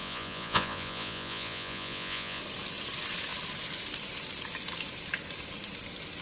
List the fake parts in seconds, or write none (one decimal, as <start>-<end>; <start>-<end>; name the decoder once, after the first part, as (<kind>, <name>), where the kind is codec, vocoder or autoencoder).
0.0-2.4 (vocoder, Vocos)